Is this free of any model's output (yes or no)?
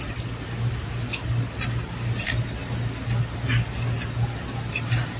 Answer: yes